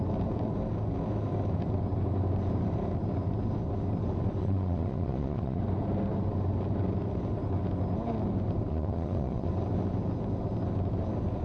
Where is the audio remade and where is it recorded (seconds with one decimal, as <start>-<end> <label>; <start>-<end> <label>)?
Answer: 0.0-4.4 recorded; 4.4-5.6 remade; 5.6-8.7 recorded; 8.7-9.5 remade; 9.5-11.4 recorded